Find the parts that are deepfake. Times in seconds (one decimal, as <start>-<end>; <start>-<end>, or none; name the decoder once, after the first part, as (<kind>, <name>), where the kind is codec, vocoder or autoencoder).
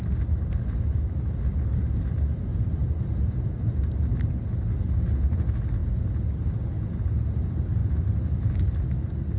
2.8-4.4 (vocoder, BigVGAN v2); 7.8-8.7